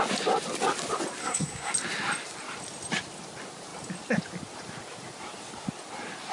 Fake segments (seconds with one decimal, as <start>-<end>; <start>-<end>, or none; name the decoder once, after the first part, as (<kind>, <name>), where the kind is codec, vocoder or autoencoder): 1.2-1.7 (codec, SNAC)